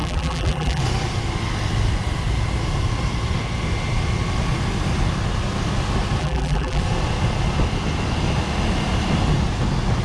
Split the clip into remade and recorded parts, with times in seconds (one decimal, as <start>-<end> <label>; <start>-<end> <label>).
0.0-0.8 remade; 0.8-6.2 recorded; 6.2-6.8 remade; 6.8-10.0 recorded